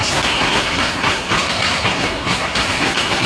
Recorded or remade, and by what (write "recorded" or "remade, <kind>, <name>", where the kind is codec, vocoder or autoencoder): remade, codec, SNAC